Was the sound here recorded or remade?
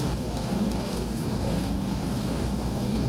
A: remade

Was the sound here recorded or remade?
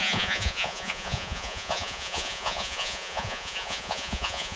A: remade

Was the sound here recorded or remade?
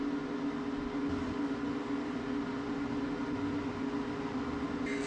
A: recorded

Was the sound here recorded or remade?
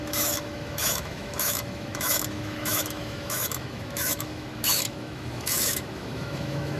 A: remade